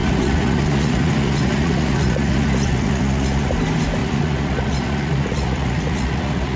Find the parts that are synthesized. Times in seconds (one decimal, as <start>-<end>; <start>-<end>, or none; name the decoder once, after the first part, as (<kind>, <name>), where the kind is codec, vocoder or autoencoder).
0.0-3.5 (vocoder, Vocos); 4.0-6.6